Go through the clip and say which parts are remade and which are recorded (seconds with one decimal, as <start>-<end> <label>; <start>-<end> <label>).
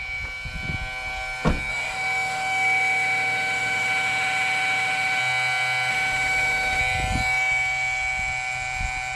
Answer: 0.0-1.7 recorded; 1.7-5.2 remade; 5.2-5.9 recorded; 5.9-6.8 remade; 6.8-9.2 recorded